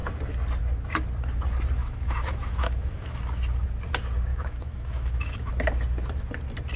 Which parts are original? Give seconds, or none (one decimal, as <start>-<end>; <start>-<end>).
0.0-1.8; 3.2-4.3; 5.5-6.8